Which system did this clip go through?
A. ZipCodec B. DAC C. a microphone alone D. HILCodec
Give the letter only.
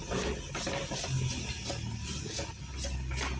C